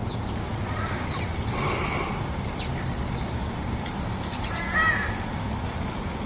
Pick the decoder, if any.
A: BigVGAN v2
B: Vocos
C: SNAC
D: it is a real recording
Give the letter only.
D